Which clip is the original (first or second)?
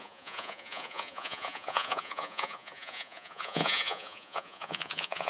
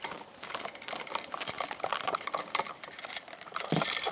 second